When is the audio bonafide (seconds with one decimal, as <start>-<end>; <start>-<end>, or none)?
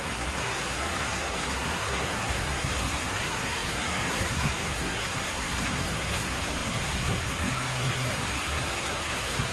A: none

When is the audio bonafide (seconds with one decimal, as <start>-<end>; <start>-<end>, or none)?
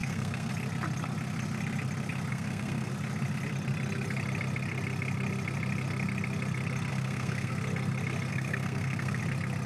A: 0.5-2.3; 2.9-6.9; 7.5-8.3; 9.2-9.7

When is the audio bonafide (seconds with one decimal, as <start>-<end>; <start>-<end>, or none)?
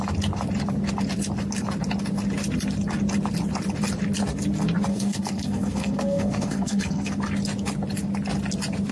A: 0.0-4.9; 7.2-8.9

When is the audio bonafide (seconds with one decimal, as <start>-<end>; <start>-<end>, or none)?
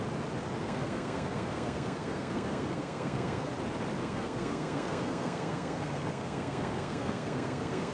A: 0.0-0.6; 3.5-4.0